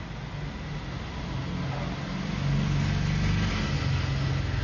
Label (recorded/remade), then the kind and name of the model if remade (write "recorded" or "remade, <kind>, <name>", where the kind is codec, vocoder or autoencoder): recorded